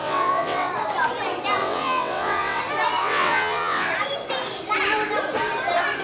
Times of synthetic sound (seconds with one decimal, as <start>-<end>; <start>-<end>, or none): 0.0-0.7; 1.6-2.6; 3.0-3.9